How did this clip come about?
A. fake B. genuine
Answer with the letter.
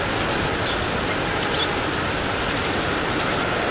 B